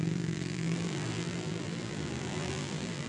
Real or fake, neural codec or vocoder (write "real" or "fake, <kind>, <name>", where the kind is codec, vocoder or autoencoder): fake, vocoder, BigVGAN v2